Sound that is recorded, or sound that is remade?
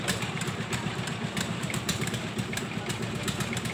remade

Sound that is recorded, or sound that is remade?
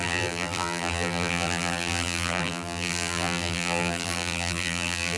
remade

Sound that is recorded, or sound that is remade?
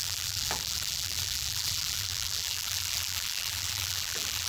remade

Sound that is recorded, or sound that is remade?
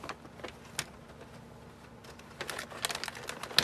recorded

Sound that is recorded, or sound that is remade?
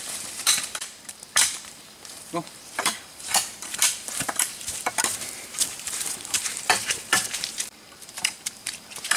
remade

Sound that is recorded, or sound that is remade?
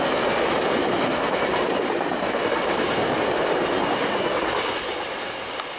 recorded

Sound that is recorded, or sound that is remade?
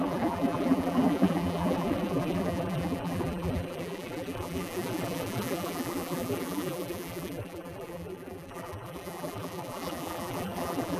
remade